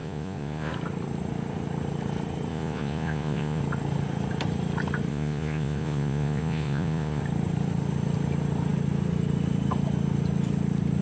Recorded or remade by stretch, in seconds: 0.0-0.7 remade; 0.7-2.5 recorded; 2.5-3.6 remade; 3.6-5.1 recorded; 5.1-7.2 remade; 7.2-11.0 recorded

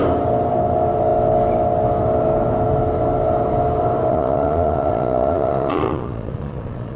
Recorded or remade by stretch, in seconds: 0.0-4.1 recorded; 4.1-7.0 remade

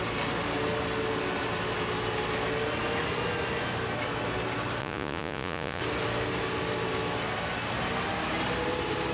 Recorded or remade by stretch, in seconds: 0.0-4.8 recorded; 4.8-5.8 remade; 5.8-9.1 recorded

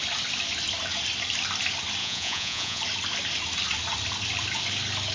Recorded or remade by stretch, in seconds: 0.0-2.0 recorded; 2.0-2.8 remade; 2.8-5.1 recorded

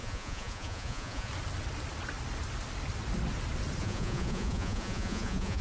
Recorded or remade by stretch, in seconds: 0.0-1.3 remade; 1.3-3.8 recorded; 3.8-5.6 remade

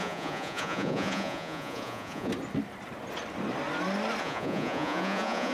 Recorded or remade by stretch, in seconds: 0.0-2.3 remade; 2.3-4.2 recorded; 4.2-5.5 remade